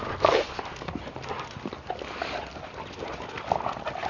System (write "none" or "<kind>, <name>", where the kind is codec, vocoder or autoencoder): none